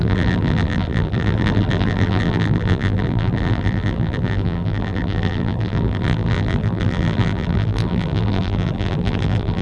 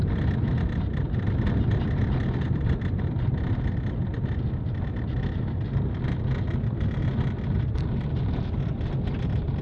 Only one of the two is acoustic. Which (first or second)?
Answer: second